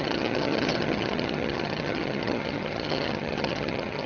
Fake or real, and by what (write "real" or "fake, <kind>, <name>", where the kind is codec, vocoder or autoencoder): fake, vocoder, HiFi-GAN